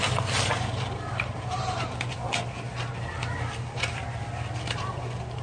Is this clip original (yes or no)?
no